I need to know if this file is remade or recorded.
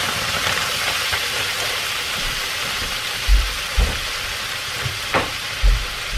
remade